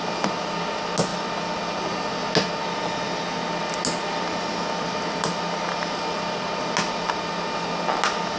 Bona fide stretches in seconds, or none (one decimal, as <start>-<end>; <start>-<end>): 0.0-8.4